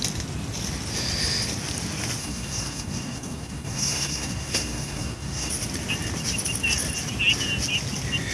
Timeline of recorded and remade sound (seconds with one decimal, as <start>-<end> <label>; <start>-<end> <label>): 0.0-2.2 recorded; 2.2-5.5 remade; 5.5-8.3 recorded